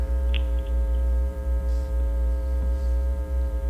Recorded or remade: remade